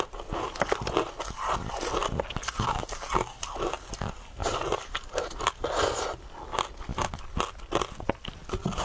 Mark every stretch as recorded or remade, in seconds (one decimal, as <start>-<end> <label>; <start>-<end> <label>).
0.0-4.4 recorded; 4.4-5.5 remade; 5.5-8.8 recorded